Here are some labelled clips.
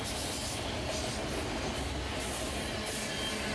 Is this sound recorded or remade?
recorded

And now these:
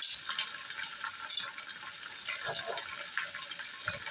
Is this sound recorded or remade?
recorded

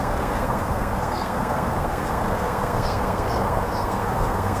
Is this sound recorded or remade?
remade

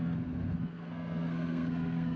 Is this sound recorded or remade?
remade